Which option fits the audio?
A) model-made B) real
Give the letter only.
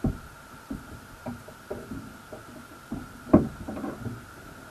B